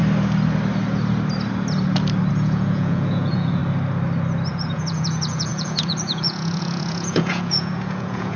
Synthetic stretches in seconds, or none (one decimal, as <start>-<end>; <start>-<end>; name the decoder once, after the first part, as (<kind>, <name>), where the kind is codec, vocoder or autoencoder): 2.3-3.6 (vocoder, Vocos); 4.5-8.4